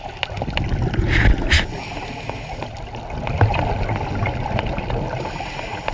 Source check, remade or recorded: recorded